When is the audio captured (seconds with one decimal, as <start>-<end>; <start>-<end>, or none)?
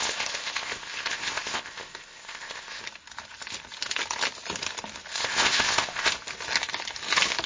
2.8-5.1; 6.1-7.5